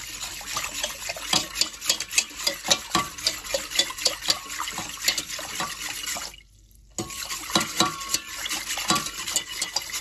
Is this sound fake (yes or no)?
no